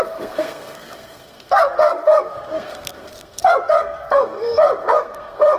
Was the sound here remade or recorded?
remade